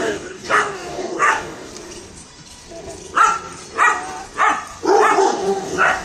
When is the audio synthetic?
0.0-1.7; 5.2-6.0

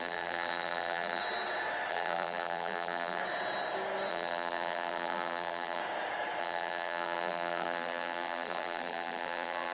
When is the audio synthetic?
0.0-1.2; 1.9-3.2; 4.1-5.8; 6.4-9.7

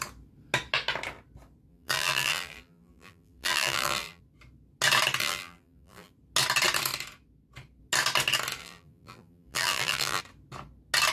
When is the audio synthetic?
1.7-4.2; 5.2-6.1; 8.6-10.2

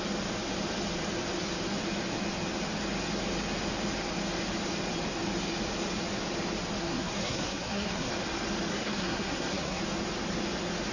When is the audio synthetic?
6.8-8.1; 8.7-9.8

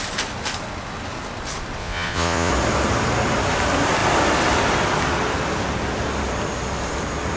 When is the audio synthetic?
1.8-2.5

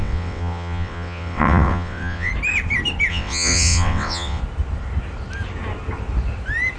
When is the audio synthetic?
0.0-2.3; 3.1-4.4